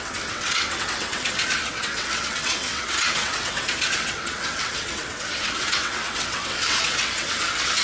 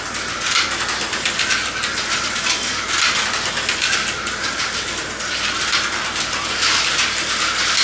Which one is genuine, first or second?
second